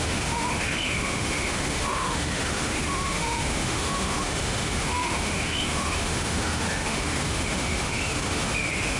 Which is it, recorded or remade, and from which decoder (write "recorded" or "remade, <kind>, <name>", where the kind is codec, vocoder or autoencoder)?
remade, autoencoder, DAC-VAE